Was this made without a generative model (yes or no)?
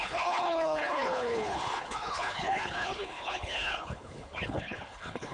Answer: no